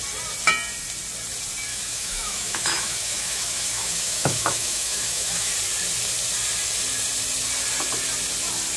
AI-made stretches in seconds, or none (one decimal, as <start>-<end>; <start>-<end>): 1.7-5.5